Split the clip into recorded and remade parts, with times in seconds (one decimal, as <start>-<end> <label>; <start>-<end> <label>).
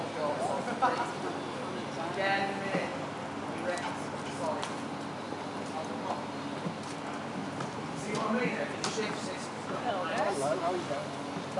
0.0-7.4 recorded; 7.4-9.9 remade; 9.9-11.6 recorded